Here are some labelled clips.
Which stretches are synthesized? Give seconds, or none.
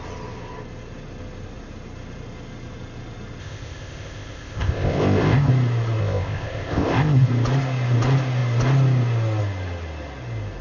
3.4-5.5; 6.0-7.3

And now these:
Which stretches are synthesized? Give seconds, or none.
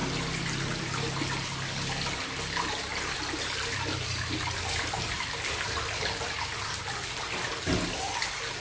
0.0-1.2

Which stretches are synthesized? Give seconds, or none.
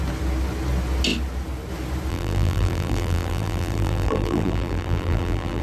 2.1-5.6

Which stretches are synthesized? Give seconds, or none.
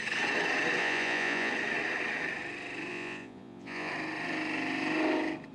0.8-1.5; 2.9-3.9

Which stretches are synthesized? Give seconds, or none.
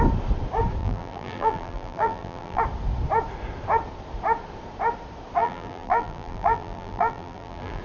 0.8-2.6; 5.4-7.8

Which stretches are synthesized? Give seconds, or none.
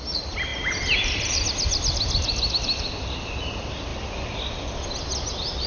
none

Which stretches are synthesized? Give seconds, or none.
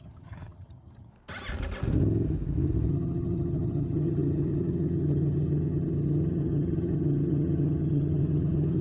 0.0-1.1; 2.9-8.8